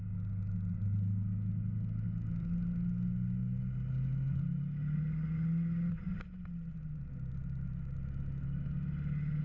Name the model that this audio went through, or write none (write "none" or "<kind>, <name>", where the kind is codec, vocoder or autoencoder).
none